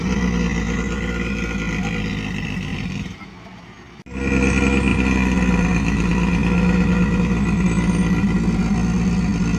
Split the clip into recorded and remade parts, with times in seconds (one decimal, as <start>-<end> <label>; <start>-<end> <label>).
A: 0.0-2.7 recorded; 2.7-3.2 remade; 3.2-9.6 recorded